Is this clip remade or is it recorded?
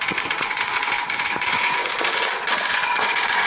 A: remade